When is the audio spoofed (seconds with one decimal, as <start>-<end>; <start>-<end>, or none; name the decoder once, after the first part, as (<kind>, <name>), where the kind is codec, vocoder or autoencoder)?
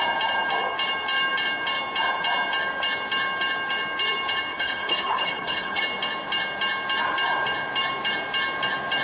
4.5-5.8 (codec, HILCodec)